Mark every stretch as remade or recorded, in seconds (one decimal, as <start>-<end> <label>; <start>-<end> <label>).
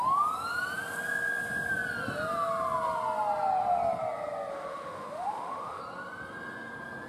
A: 0.0-4.5 recorded; 4.5-5.8 remade; 5.8-7.1 recorded